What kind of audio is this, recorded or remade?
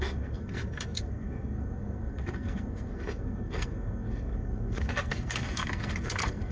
remade